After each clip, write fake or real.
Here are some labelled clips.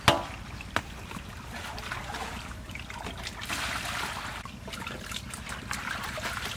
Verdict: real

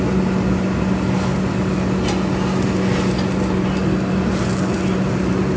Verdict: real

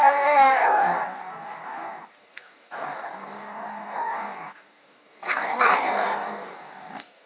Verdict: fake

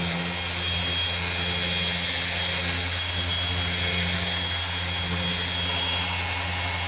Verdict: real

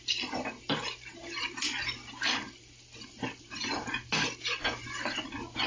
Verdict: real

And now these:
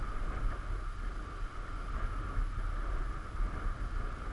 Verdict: real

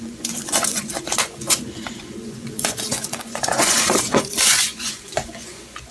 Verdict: fake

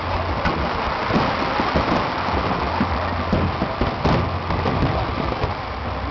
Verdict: real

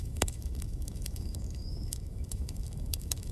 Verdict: fake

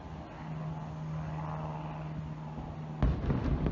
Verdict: real